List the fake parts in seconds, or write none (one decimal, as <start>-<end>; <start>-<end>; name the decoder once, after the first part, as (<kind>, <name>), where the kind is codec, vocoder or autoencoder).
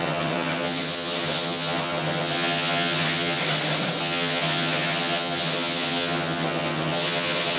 0.0-3.4 (vocoder, HiFi-GAN); 4.0-7.6